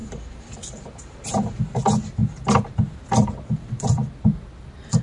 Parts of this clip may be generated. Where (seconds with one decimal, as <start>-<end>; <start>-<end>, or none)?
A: 0.0-1.6